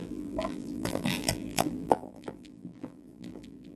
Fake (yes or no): yes